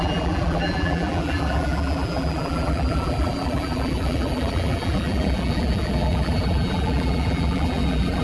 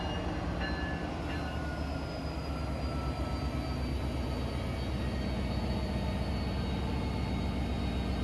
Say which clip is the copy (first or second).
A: first